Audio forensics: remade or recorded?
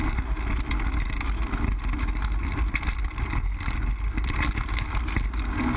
recorded